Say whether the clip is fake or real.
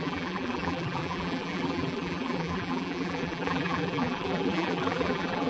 fake